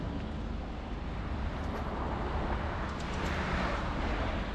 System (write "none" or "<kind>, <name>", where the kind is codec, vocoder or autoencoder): none